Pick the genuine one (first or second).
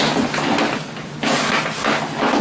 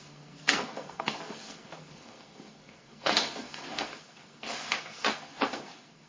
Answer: first